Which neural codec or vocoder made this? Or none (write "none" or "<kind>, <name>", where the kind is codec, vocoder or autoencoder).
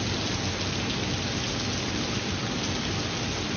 none